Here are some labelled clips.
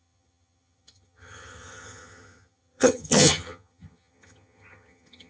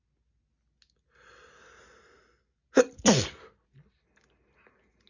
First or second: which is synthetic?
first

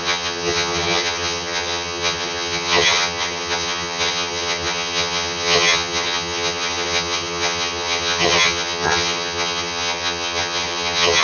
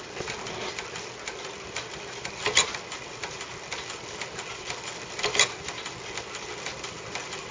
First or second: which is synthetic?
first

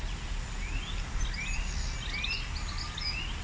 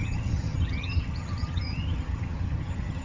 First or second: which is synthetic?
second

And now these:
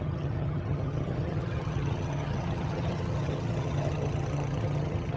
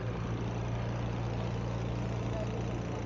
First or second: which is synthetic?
first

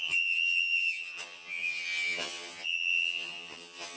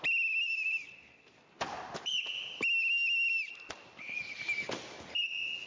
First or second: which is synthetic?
first